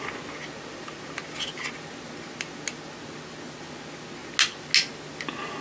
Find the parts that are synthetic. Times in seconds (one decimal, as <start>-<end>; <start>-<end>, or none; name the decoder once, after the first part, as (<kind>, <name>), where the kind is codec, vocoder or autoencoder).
none